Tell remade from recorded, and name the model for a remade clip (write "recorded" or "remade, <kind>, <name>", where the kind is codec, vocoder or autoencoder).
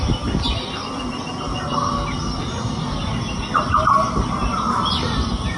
recorded